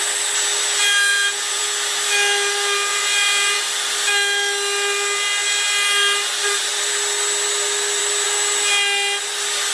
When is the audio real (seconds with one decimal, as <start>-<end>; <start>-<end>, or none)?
0.0-1.1; 1.7-2.9; 3.6-9.7